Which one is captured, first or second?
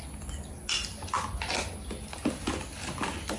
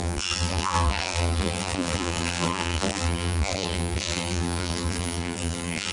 first